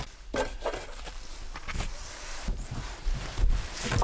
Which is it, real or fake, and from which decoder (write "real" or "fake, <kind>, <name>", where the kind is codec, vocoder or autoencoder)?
fake, vocoder, BigVGAN v2